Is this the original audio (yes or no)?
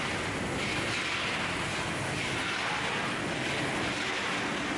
yes